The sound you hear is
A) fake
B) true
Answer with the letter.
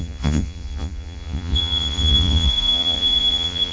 A